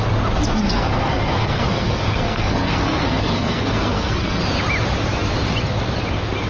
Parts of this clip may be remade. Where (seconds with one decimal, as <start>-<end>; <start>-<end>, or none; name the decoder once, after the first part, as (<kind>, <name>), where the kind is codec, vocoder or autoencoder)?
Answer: 0.5-4.4 (codec, SNAC)